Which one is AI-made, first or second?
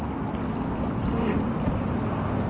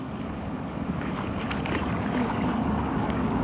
second